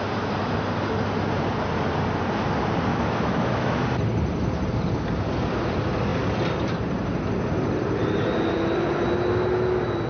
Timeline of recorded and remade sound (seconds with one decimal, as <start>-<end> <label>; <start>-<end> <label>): 0.0-2.9 recorded; 2.9-3.8 remade; 3.8-10.1 recorded